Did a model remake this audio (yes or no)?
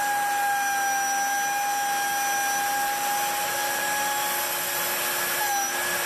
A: no